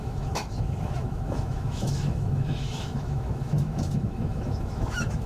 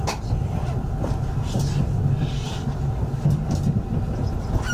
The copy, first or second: first